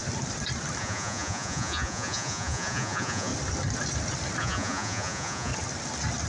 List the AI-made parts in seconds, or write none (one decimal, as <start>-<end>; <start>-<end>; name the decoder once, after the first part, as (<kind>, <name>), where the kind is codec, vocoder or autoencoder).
0.8-3.3 (vocoder, Vocos); 4.4-5.5